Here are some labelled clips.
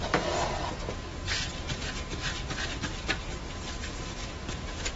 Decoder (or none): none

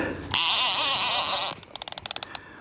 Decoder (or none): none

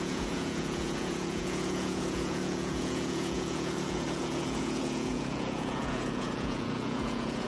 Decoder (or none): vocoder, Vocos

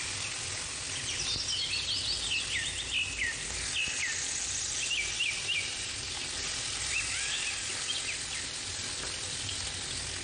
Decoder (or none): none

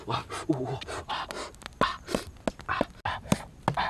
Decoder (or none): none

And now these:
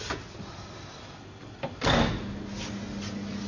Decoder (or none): none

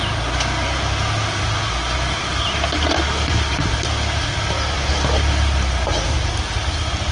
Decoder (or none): none